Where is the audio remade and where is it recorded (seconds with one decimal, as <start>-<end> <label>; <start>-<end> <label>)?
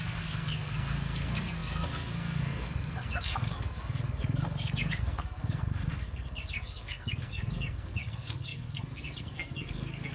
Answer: 0.0-10.1 remade